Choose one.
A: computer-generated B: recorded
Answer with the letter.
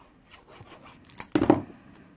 B